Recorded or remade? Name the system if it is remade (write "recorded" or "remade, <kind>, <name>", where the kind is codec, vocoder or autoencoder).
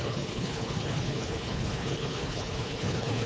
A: remade, codec, HILCodec